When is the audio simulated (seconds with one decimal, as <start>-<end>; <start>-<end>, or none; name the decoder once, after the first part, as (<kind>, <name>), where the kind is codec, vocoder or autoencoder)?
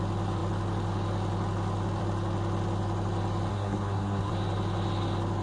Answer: 3.5-4.3 (codec, SNAC)